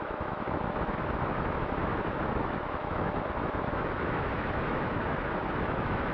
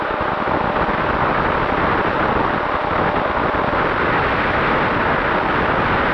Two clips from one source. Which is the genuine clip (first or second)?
second